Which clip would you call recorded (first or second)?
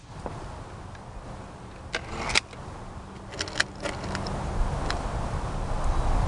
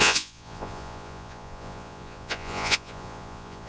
first